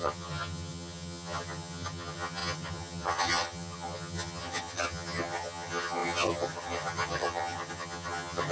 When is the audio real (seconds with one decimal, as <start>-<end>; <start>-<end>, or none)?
none